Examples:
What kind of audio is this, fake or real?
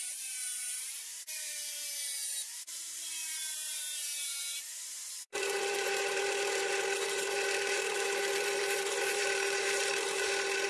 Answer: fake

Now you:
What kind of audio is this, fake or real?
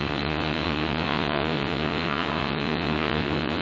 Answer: fake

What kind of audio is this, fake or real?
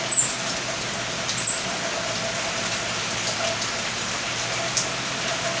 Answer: real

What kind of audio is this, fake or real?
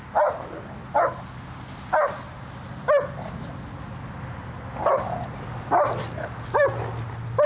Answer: real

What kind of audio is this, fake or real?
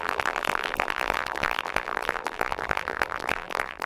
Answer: fake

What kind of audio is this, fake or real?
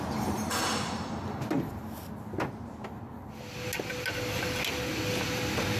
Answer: real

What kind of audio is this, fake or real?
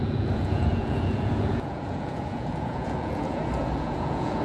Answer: fake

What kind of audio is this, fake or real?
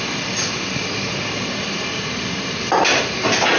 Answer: real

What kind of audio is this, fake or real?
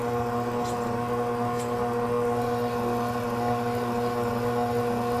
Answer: real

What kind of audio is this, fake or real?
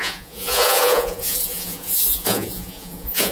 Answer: fake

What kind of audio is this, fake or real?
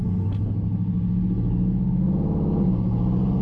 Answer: real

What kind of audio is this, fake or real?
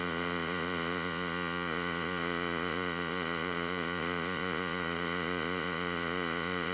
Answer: fake